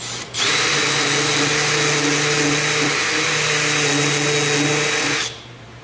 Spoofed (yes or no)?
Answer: no